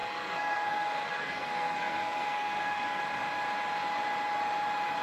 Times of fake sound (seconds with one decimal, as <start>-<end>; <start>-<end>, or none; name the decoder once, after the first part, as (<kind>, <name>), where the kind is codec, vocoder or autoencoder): 0.0-3.0 (codec, SNAC)